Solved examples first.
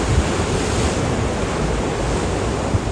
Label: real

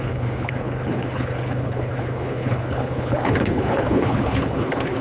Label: fake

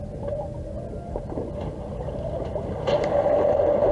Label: real